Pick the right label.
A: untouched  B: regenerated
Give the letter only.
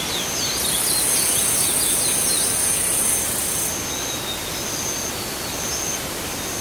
A